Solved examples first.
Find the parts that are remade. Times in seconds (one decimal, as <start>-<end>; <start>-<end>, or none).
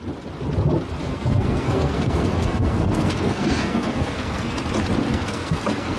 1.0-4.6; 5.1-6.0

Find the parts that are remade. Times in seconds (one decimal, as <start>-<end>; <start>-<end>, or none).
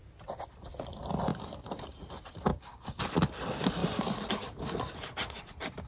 2.5-3.0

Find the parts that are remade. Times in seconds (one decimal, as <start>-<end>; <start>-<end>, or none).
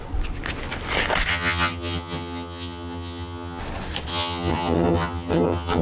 1.3-3.6; 4.1-5.8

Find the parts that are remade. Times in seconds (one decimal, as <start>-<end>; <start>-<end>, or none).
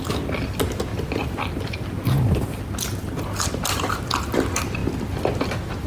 4.8-5.9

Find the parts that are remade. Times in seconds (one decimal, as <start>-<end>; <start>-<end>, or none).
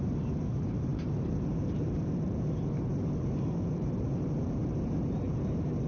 0.0-5.9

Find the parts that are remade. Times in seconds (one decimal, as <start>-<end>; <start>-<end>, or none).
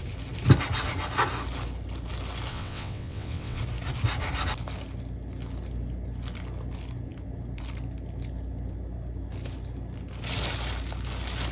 2.5-3.6